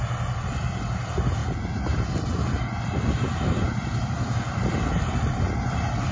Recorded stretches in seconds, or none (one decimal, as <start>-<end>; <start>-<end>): 0.0-6.1